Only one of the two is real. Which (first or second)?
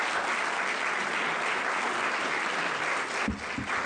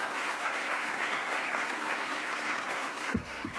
first